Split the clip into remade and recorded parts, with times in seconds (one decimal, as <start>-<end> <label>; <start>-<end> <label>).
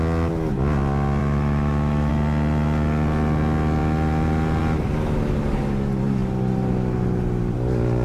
0.0-1.2 recorded; 1.2-2.1 remade; 2.1-8.0 recorded